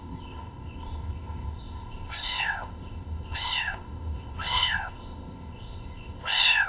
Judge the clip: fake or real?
fake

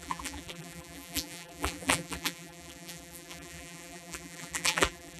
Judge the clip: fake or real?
fake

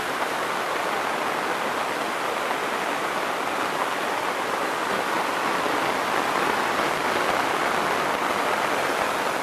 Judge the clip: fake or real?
real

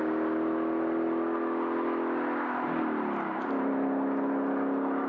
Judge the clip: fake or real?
real